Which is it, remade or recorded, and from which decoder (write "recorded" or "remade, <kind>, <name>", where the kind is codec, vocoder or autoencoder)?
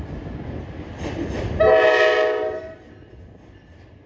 recorded